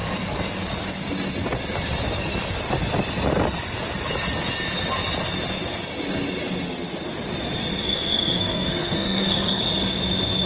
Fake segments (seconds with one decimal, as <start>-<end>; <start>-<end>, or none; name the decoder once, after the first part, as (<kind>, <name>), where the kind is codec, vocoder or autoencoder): 7.7-9.6 (codec, SNAC)